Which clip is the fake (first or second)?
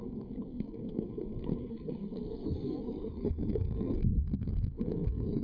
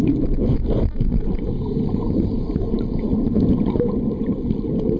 first